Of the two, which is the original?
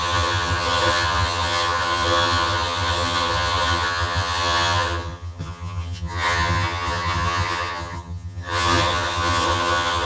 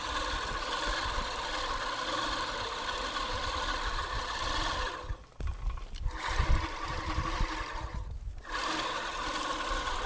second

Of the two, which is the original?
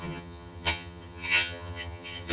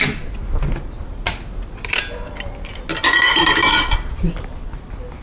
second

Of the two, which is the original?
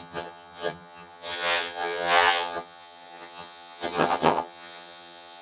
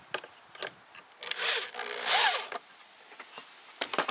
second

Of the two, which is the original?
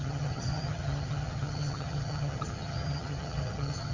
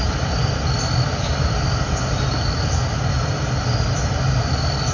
second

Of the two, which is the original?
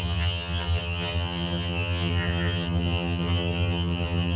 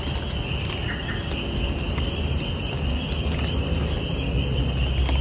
second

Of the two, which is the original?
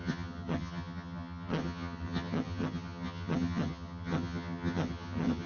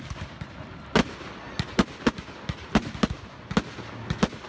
second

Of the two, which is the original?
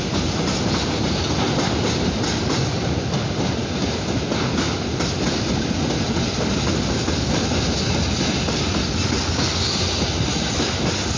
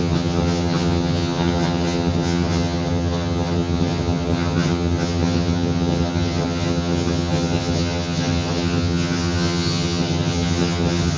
first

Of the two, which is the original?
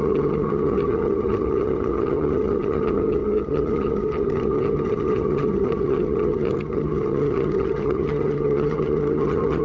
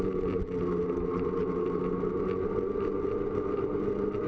second